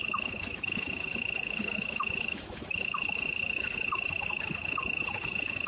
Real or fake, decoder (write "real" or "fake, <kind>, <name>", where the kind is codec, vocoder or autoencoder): fake, autoencoder, DAC-VAE